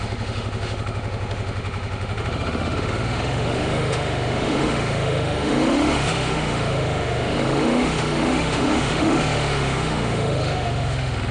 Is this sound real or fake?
fake